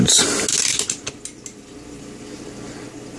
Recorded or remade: recorded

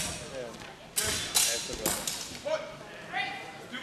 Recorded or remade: recorded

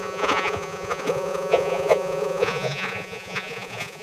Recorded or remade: remade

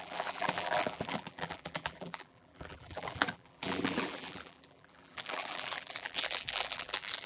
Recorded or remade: remade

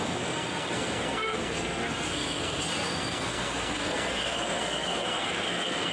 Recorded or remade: remade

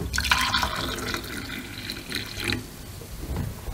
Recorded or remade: recorded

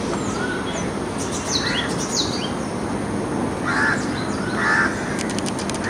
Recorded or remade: recorded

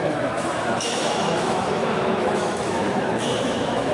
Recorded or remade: remade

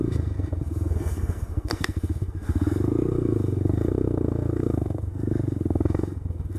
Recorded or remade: remade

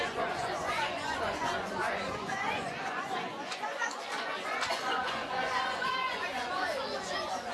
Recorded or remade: remade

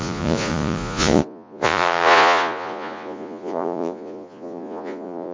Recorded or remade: remade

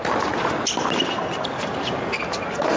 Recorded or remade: recorded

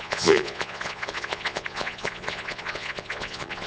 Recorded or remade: remade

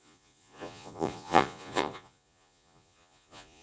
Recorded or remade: remade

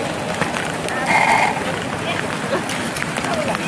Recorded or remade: recorded